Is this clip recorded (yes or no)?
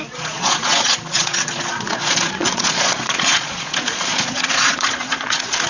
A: no